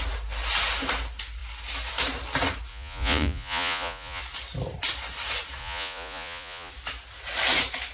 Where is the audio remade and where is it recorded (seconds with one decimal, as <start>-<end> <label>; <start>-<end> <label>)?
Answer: 0.0-2.7 recorded; 2.7-4.2 remade; 4.2-5.6 recorded; 5.6-6.7 remade; 6.7-7.9 recorded